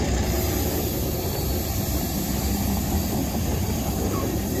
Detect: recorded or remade recorded